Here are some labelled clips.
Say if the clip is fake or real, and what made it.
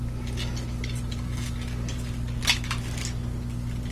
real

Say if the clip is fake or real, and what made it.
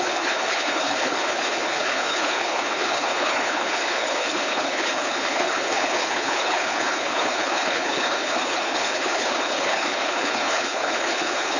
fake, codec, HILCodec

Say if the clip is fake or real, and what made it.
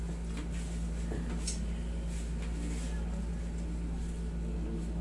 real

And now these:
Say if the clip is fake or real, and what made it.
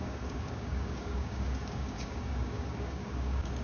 fake, codec, DAC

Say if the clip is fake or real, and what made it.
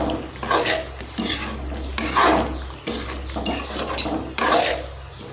real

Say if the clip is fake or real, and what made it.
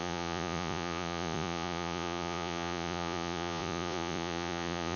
fake, vocoder, Vocos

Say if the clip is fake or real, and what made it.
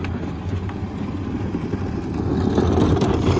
real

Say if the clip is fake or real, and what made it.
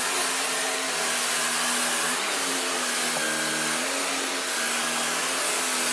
real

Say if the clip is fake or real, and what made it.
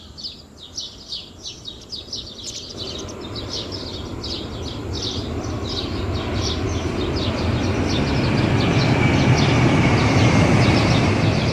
real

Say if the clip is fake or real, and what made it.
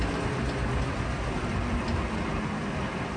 real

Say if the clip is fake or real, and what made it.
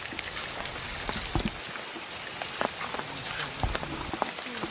real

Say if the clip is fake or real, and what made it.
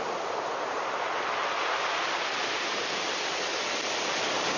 real